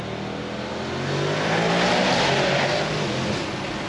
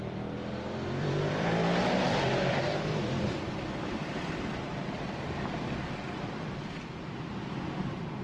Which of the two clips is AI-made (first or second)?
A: second